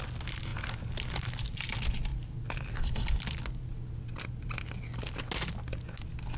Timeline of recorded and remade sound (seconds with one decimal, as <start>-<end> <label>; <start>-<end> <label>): 0.0-6.4 recorded